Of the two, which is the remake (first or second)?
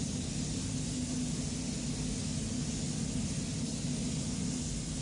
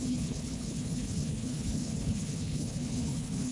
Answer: second